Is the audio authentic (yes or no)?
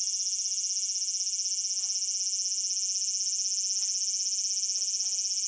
yes